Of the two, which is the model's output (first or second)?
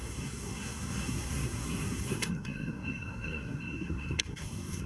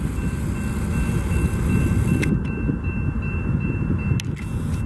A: first